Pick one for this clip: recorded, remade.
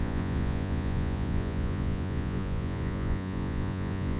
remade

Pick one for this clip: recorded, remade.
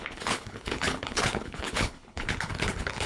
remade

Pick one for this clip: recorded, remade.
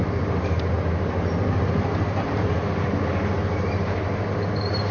recorded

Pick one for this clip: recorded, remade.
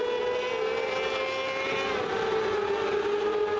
recorded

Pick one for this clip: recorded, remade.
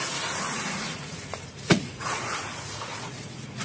remade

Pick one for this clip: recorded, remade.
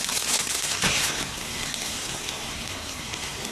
remade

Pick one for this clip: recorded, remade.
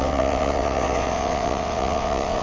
remade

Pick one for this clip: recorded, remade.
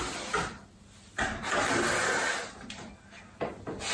recorded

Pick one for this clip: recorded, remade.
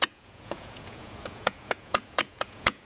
remade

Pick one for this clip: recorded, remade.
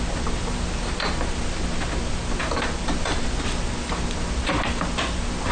recorded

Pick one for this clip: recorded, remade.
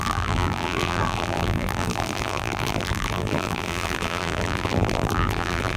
remade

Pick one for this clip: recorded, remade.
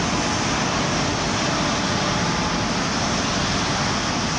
recorded